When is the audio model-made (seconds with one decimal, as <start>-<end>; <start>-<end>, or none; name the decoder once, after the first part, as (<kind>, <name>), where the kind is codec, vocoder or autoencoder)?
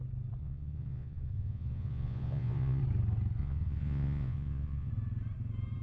0.4-2.8 (vocoder, Vocos); 3.4-4.9